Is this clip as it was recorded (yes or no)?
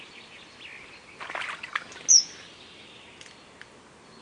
yes